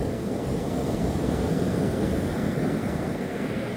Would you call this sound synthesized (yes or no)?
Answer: yes